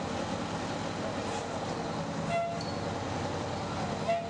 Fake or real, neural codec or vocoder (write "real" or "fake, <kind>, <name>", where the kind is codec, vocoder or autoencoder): real